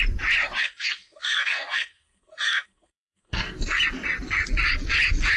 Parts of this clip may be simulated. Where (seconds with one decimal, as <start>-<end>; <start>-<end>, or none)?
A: 0.6-3.8